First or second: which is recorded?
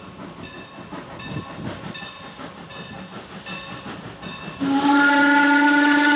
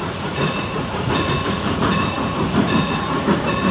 first